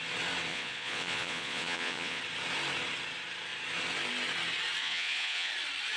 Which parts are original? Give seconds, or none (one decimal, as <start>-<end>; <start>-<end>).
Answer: 0.0-0.5; 2.2-4.8; 5.5-6.0